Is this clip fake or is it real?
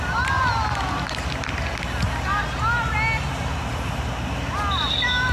real